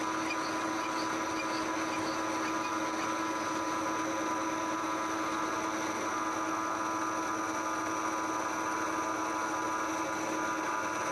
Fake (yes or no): no